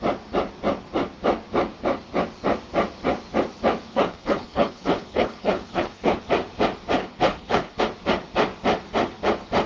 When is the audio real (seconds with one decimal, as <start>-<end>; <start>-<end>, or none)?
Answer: 0.0-3.9; 6.2-7.0; 7.8-9.7